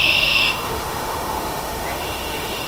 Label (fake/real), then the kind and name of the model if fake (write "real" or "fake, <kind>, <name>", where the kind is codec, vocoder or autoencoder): fake, autoencoder, DAC-VAE